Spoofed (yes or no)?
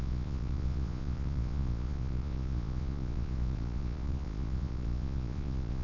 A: yes